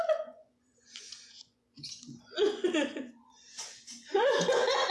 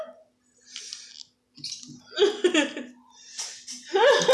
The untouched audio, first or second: second